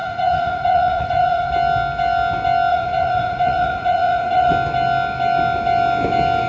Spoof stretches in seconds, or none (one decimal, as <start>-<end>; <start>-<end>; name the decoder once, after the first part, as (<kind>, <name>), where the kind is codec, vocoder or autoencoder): 0.0-1.5 (vocoder, Vocos); 2.7-4.5